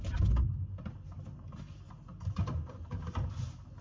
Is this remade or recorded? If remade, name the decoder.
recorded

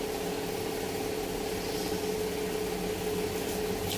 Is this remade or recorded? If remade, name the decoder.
recorded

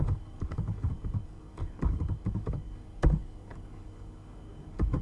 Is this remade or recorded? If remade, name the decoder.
remade, codec, DAC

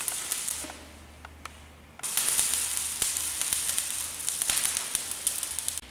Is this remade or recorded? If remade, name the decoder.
recorded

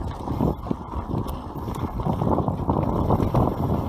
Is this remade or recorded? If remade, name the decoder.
recorded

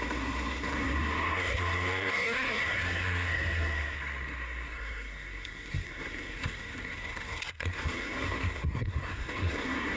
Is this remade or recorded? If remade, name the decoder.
remade, codec, SNAC